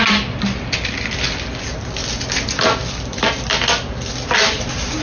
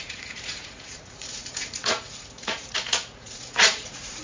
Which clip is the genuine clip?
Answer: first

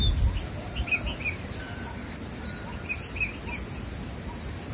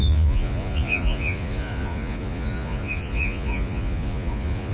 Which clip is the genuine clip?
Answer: first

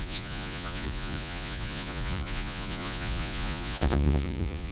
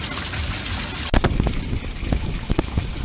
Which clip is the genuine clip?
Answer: second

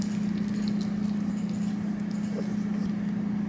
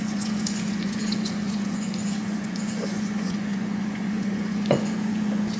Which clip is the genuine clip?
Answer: first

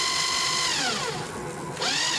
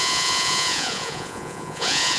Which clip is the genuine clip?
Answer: first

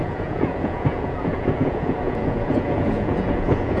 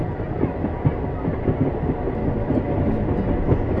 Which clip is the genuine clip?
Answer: second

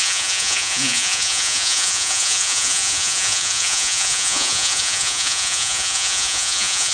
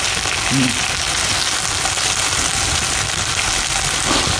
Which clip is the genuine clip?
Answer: second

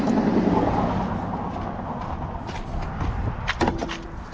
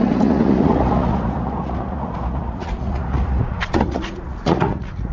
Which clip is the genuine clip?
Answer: first